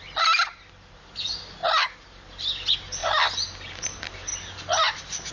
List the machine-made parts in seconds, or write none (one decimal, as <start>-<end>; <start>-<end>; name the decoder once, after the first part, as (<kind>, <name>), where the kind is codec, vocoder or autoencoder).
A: 4.3-5.3 (vocoder, BigVGAN v2)